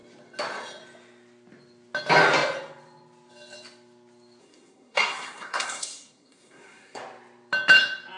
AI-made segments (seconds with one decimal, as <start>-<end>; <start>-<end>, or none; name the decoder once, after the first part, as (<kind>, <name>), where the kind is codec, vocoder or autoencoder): 4.4-7.0 (codec, SNAC)